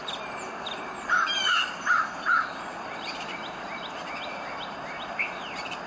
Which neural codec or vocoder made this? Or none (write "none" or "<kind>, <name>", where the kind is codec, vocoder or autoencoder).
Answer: vocoder, BigVGAN v2